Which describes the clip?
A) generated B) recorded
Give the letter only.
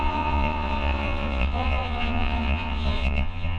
A